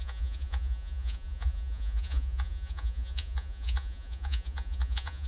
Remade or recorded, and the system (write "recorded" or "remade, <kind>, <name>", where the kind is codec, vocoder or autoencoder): remade, vocoder, Vocos